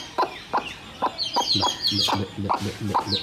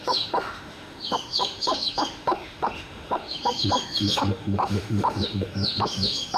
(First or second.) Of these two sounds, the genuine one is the first